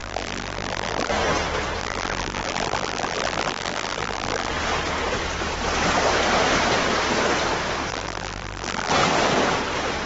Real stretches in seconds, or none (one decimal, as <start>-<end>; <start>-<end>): 1.1-1.8; 4.5-7.9; 8.9-10.1